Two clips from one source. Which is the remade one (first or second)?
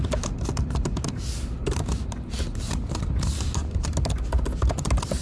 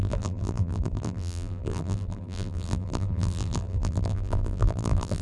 second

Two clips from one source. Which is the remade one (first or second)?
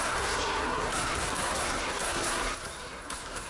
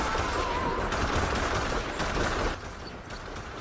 first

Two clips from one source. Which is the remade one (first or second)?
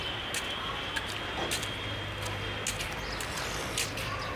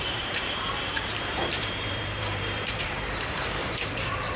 second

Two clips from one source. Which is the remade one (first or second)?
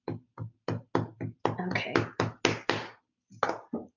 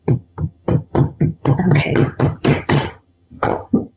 second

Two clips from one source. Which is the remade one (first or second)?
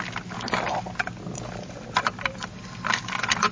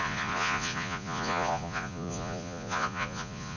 second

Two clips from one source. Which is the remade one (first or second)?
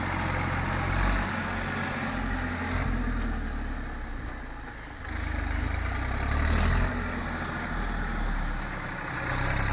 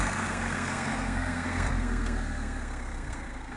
second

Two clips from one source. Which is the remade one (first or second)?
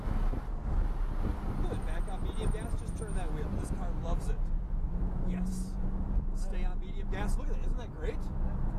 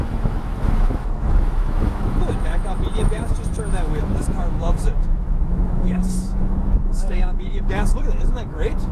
second